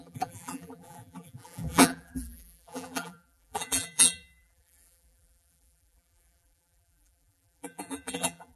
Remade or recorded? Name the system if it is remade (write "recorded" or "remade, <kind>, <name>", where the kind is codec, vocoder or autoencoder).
remade, vocoder, BigVGAN v2